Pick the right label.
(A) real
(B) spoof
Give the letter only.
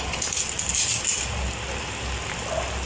A